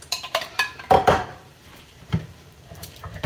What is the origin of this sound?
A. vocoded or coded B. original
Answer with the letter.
A